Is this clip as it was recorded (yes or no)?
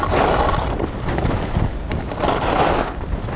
yes